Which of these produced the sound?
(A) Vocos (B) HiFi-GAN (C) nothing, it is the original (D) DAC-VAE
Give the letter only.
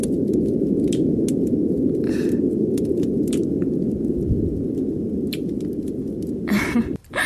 C